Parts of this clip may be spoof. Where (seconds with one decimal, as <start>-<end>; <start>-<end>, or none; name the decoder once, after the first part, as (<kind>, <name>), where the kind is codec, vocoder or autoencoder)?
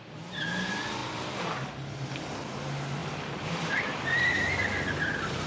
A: 1.0-1.9 (vocoder, BigVGAN v2); 3.0-4.0